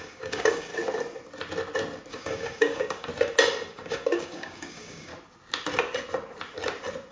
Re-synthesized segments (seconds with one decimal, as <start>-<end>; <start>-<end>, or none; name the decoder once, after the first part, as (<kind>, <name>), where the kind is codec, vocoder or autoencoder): 0.0-0.7 (codec, DAC); 2.1-3.1; 3.7-5.1